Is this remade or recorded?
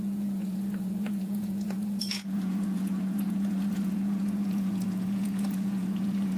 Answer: remade